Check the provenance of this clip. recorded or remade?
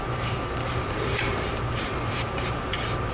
remade